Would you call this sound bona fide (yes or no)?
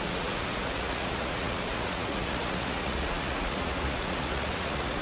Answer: no